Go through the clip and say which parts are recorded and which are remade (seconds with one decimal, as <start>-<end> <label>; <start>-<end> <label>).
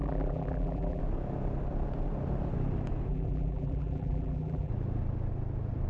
0.0-1.0 remade; 1.0-3.1 recorded; 3.1-4.7 remade; 4.7-5.9 recorded